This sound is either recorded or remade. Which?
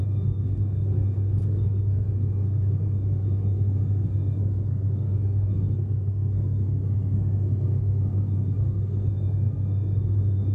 remade